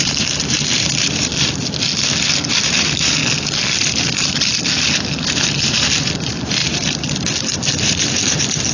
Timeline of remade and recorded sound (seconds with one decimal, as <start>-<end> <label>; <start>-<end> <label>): 0.0-1.3 remade; 1.3-2.5 recorded; 2.5-3.2 remade; 3.2-5.2 recorded; 5.2-8.7 remade